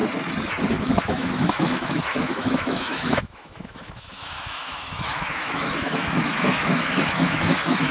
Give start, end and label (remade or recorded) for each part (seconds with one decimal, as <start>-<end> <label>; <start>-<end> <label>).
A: 0.0-0.7 recorded; 0.7-7.9 remade